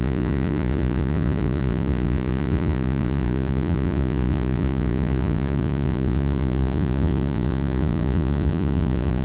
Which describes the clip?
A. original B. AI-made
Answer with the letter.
B